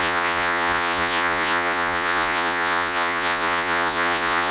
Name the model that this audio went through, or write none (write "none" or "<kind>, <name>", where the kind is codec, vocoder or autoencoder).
vocoder, Vocos